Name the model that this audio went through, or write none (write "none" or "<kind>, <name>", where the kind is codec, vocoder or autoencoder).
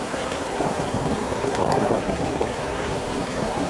codec, SNAC